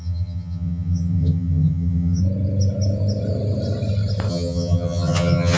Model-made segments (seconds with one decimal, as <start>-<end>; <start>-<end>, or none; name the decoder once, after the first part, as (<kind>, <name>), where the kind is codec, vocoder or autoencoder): 0.0-2.2 (vocoder, HiFi-GAN); 4.3-5.6

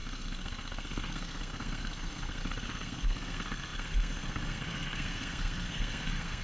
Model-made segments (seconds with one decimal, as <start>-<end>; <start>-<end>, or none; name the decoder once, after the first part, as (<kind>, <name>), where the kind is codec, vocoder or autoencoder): 0.0-6.4 (codec, SNAC)

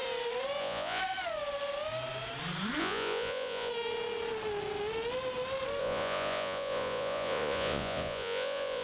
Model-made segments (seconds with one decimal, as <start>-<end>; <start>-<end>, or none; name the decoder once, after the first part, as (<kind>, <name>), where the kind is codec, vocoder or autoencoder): 0.6-1.0 (vocoder, Vocos); 2.8-3.7; 5.8-8.8

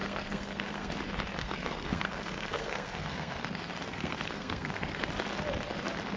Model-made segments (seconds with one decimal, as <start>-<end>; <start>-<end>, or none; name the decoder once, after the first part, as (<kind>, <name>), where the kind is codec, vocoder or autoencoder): 0.0-0.9 (codec, SNAC); 1.4-5.1